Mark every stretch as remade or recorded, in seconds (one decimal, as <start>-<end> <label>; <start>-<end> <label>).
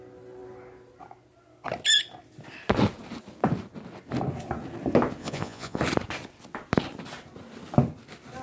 0.0-5.2 recorded; 5.2-5.8 remade; 5.8-8.4 recorded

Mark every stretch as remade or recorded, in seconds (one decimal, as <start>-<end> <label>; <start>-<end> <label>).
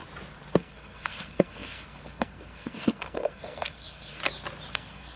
0.0-0.5 recorded; 0.5-4.2 remade; 4.2-4.7 recorded; 4.7-5.2 remade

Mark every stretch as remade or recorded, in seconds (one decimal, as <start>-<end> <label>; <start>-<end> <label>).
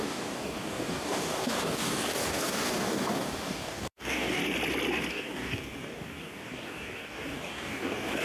0.0-4.4 remade; 4.4-5.1 recorded; 5.1-8.2 remade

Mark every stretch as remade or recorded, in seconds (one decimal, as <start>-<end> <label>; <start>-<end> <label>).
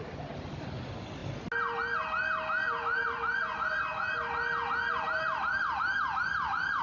0.0-6.8 recorded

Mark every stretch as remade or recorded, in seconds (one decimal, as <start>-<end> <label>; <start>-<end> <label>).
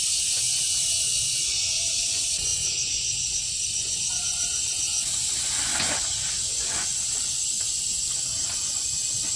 0.0-9.4 remade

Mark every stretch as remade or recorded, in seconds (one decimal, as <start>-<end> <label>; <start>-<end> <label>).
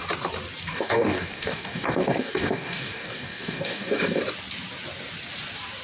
0.0-0.7 recorded; 0.7-4.2 remade; 4.2-5.8 recorded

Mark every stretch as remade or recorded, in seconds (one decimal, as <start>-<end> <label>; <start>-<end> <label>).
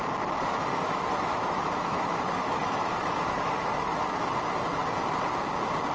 0.0-0.5 recorded; 0.5-4.0 remade; 4.0-5.9 recorded